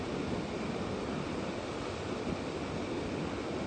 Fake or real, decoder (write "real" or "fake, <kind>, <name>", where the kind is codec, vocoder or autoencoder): real